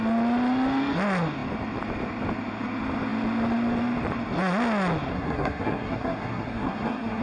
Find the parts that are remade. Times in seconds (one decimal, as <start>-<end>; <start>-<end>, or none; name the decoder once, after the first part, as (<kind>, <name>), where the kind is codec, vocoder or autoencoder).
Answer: 5.1-7.2 (codec, SNAC)